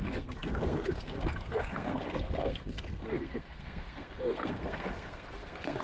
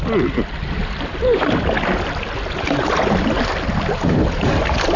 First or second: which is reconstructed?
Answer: first